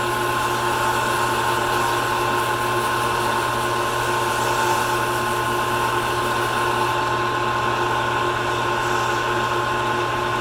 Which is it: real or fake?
real